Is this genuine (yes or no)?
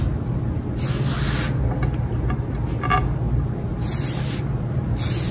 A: yes